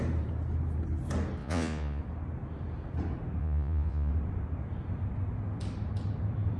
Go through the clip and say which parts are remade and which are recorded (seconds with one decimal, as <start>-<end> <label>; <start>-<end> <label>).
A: 0.0-1.4 recorded; 1.4-2.0 remade; 2.0-3.4 recorded; 3.4-4.1 remade; 4.1-6.6 recorded